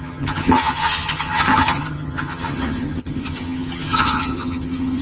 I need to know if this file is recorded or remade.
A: remade